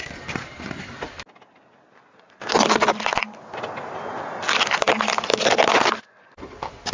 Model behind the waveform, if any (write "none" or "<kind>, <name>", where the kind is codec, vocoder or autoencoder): none